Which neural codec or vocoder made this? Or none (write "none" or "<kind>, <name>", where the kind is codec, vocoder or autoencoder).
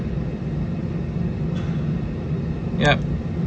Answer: none